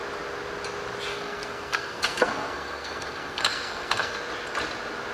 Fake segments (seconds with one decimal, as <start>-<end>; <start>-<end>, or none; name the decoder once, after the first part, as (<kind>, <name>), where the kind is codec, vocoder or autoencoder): 1.1-4.2 (codec, SNAC)